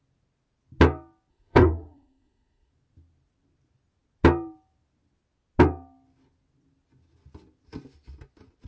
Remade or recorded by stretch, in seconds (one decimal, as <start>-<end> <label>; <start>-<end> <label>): 0.0-1.3 recorded; 1.3-2.7 remade; 2.7-8.7 recorded